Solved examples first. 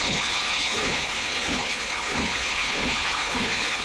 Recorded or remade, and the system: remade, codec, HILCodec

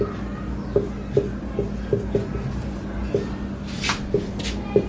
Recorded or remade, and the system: recorded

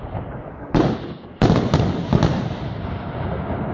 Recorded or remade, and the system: recorded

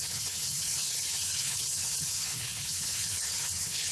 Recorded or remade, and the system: remade, codec, HILCodec